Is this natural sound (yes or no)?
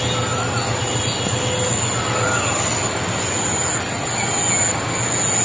yes